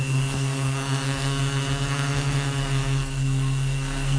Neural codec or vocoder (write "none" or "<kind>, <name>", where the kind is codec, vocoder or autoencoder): codec, SNAC